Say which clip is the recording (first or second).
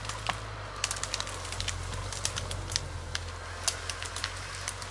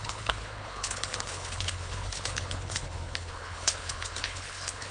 first